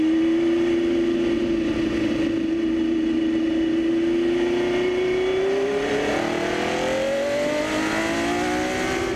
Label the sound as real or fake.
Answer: real